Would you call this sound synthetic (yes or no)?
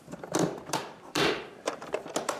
yes